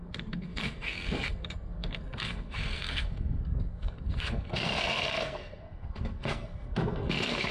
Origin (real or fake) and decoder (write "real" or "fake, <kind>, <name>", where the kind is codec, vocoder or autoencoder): fake, codec, SNAC